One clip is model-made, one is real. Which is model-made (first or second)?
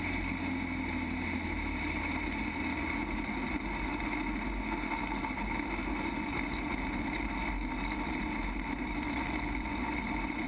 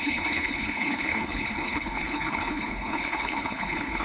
second